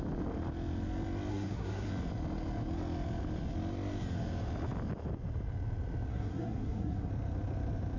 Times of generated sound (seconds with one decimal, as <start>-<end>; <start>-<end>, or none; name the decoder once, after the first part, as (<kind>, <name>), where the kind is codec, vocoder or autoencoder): 1.3-1.9 (codec, SNAC); 6.1-7.1